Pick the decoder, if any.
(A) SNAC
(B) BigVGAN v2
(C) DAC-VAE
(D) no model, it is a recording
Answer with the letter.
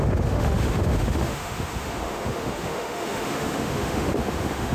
C